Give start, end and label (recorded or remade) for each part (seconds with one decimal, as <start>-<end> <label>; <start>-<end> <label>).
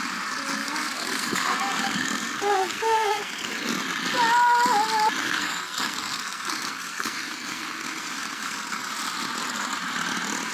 0.0-0.6 recorded; 0.6-3.5 remade; 3.5-5.2 recorded; 5.2-8.9 remade; 8.9-10.5 recorded